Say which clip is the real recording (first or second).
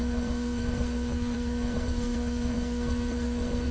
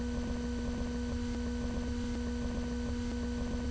second